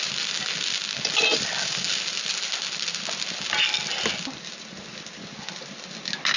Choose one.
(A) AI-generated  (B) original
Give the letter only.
B